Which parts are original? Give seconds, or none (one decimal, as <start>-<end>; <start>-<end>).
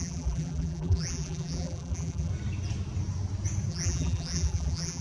2.3-3.7